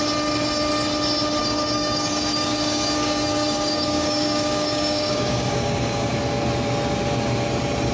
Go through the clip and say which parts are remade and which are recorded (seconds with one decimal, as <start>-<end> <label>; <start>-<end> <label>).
0.0-1.4 recorded; 1.4-6.1 remade; 6.1-7.9 recorded